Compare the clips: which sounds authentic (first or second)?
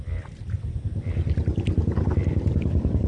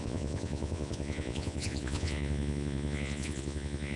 first